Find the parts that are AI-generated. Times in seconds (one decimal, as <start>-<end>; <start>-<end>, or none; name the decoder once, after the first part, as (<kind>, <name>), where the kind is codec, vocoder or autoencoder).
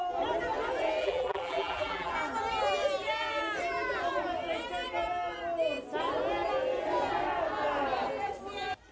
1.0-2.1 (vocoder, BigVGAN v2)